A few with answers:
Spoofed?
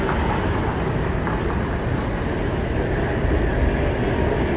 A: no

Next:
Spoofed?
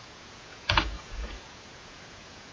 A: yes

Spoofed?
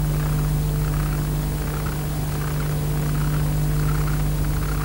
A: no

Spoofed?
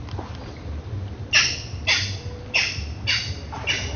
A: no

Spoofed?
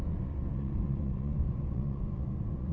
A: yes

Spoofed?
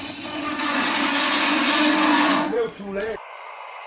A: yes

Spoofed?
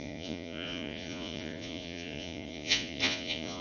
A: yes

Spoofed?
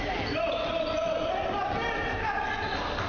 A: no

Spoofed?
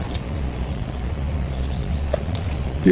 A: yes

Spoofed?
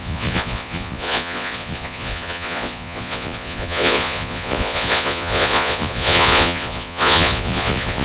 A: yes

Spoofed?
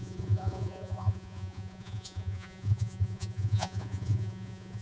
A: yes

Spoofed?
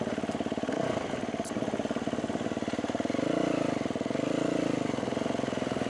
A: no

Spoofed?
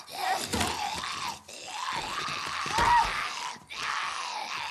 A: no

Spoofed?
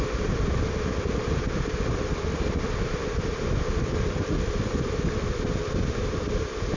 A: no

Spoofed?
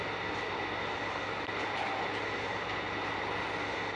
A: no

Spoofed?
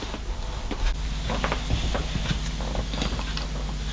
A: no